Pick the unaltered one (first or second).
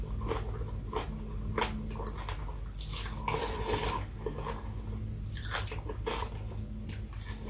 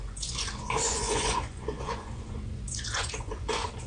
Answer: first